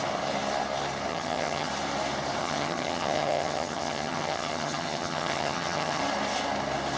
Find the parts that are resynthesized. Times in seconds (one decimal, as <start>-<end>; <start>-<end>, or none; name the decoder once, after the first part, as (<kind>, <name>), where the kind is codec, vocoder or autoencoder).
1.1-1.7 (vocoder, HiFi-GAN); 2.4-6.0